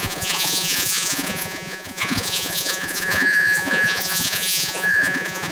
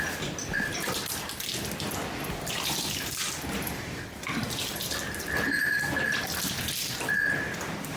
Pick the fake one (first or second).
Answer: first